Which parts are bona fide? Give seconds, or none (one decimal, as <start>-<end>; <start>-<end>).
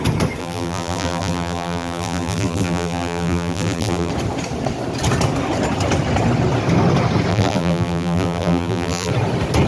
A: 0.0-0.4; 4.1-7.3; 9.1-9.7